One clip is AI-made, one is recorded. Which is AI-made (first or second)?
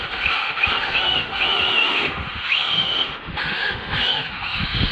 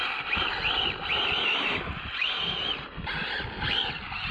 first